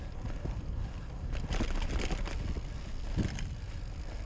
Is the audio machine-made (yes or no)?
no